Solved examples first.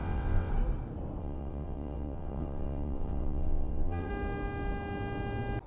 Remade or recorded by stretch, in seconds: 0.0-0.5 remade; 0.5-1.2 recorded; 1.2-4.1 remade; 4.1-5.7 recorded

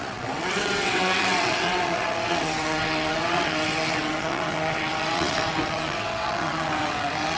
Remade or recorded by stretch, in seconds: 0.0-7.4 remade

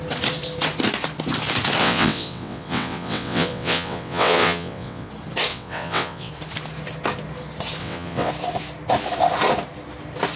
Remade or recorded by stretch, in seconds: 0.0-1.8 recorded; 1.8-5.1 remade; 5.1-5.5 recorded; 5.5-6.3 remade; 6.3-7.8 recorded; 7.8-8.3 remade; 8.3-10.4 recorded

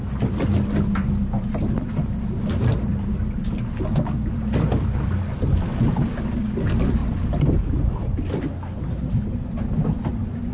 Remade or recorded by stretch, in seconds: 0.0-10.5 recorded

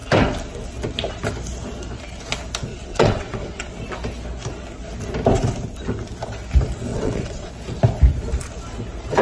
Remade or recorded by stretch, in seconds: 0.0-2.7 recorded; 2.7-3.7 remade; 3.7-6.9 recorded; 6.9-7.5 remade; 7.5-9.2 recorded

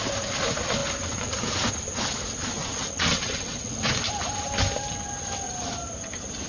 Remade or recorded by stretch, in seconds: 0.0-2.6 recorded; 2.6-3.9 remade; 3.9-6.5 recorded